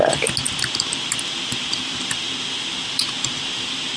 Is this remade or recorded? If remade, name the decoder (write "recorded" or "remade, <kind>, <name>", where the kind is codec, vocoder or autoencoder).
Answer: recorded